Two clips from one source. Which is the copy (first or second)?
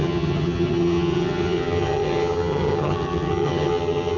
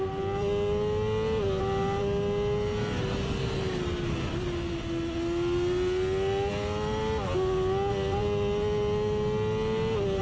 first